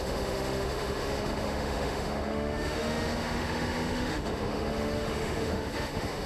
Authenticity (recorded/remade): remade